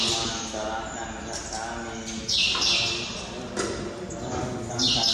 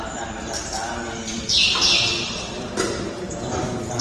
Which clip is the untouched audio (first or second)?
first